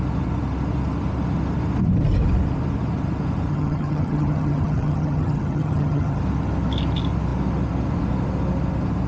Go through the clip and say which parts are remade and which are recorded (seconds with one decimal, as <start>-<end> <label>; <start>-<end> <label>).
0.0-3.5 recorded; 3.5-6.2 remade; 6.2-9.1 recorded